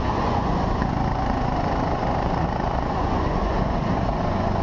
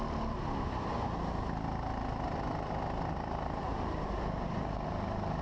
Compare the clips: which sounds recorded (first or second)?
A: second